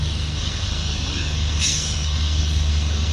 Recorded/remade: remade